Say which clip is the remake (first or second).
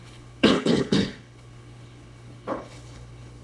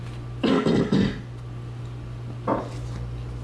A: first